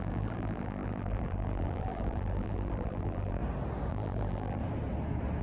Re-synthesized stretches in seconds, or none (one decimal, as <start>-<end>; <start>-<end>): 0.0-3.4; 3.9-4.6